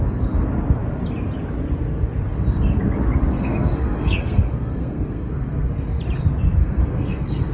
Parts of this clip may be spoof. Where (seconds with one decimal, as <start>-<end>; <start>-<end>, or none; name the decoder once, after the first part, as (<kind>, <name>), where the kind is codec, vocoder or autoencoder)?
3.3-6.0 (codec, SNAC); 6.6-7.5